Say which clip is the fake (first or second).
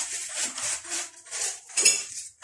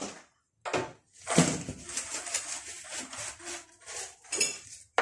first